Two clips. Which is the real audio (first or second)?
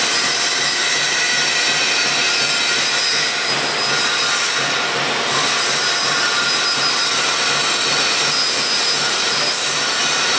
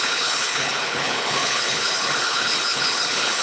first